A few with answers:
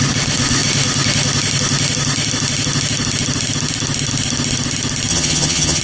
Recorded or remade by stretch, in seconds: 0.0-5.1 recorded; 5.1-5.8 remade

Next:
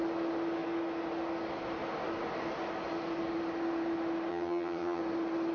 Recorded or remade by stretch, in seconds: 0.0-4.3 recorded; 4.3-5.0 remade; 5.0-5.5 recorded